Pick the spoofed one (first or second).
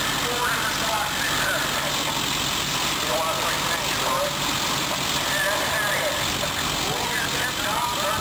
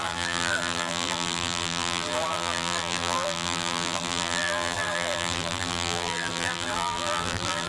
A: second